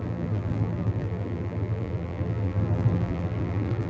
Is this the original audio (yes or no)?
no